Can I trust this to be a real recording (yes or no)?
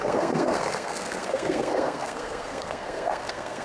no